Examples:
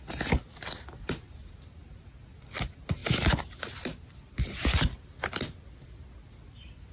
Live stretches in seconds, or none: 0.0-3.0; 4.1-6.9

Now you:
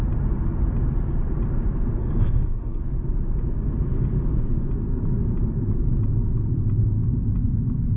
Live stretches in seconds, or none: 0.0-2.0; 2.8-8.0

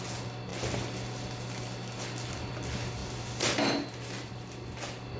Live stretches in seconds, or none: 0.0-5.2

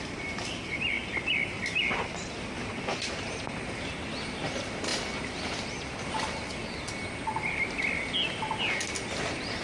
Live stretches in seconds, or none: 0.0-9.6

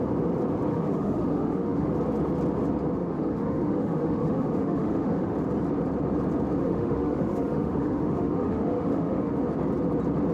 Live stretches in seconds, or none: 0.0-0.7; 1.9-3.0; 5.3-6.6; 9.3-10.3

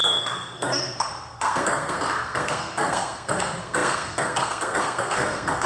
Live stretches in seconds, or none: none

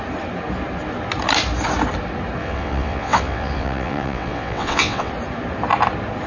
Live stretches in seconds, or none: 0.0-2.4; 5.1-6.3

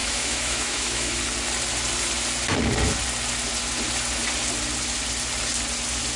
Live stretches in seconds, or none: 1.2-6.2